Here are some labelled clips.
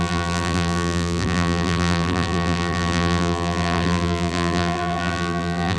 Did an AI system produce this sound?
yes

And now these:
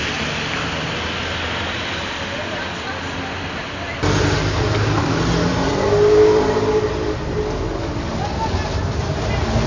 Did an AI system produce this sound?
no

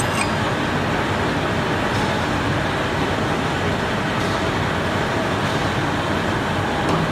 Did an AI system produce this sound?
no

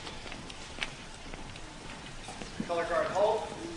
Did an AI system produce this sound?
yes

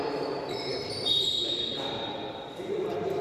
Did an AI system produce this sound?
yes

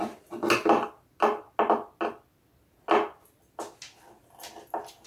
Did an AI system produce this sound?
no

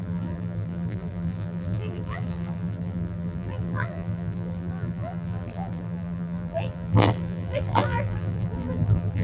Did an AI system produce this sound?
yes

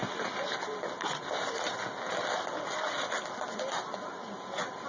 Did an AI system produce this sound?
no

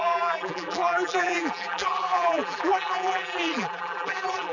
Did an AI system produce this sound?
yes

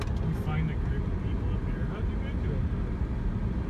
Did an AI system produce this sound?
no